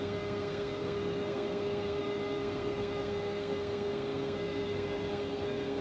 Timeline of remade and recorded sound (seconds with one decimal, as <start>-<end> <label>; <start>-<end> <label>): 0.0-5.8 remade